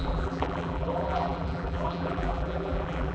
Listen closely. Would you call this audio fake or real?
fake